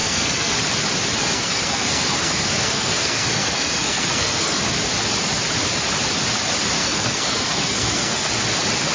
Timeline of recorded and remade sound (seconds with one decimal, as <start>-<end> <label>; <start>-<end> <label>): 0.0-0.5 remade; 0.5-1.2 recorded; 1.2-4.6 remade; 4.6-6.8 recorded; 6.8-8.3 remade; 8.3-8.9 recorded